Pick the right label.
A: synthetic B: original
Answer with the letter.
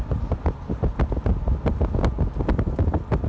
B